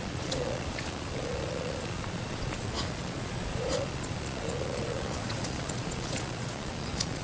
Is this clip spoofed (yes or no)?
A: yes